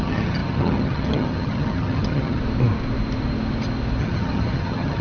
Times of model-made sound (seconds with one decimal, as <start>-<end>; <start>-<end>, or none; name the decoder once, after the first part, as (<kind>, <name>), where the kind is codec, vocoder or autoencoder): 0.0-2.4 (vocoder, HiFi-GAN); 4.0-5.0